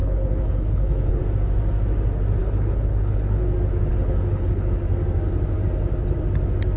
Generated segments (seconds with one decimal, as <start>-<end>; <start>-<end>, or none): 0.0-1.2; 2.4-3.4; 3.9-4.8

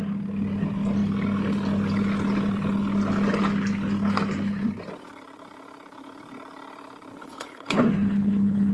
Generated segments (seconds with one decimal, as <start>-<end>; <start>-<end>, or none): 7.1-8.7